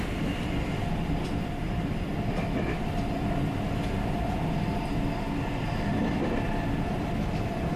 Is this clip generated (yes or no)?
yes